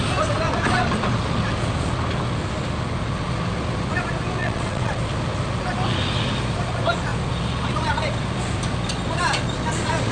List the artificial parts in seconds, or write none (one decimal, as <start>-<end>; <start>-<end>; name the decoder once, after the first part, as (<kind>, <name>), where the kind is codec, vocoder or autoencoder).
4.4-5.0 (vocoder, WaveNeXt)